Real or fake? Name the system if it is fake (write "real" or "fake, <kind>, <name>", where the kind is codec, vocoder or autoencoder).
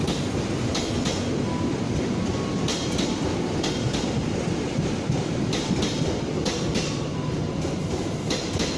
real